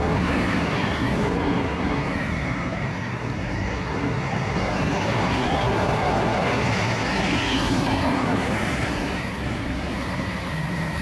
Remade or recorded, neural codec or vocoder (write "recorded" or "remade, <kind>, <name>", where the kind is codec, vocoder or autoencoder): remade, codec, SNAC